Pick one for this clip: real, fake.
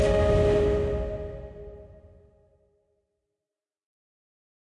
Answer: real